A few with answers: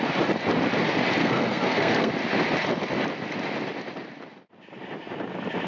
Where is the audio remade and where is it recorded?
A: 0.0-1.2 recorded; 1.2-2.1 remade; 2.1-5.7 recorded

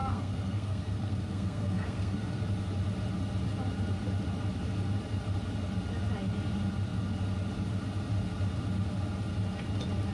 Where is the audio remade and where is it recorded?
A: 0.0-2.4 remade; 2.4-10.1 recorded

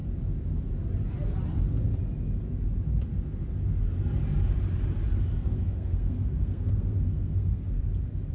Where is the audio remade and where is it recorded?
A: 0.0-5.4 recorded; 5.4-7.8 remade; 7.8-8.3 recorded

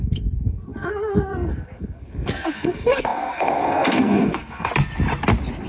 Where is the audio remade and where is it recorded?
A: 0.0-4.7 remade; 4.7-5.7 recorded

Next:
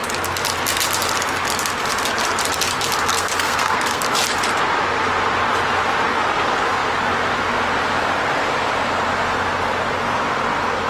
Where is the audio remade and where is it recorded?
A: 0.0-3.1 recorded; 3.1-4.0 remade; 4.0-10.9 recorded

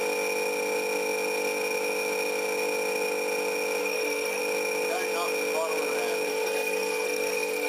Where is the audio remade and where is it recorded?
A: 0.0-3.8 recorded; 3.8-4.4 remade; 4.4-6.3 recorded; 6.3-7.7 remade

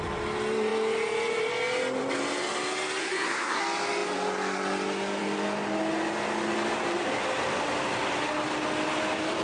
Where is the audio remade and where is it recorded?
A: 0.0-3.0 recorded; 3.0-3.6 remade; 3.6-9.4 recorded